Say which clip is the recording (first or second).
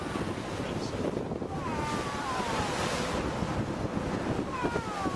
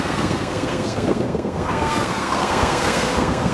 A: first